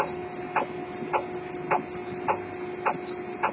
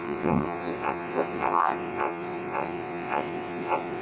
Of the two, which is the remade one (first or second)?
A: second